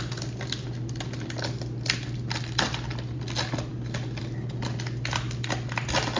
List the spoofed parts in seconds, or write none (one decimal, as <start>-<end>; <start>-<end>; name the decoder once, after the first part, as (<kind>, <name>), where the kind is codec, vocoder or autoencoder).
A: none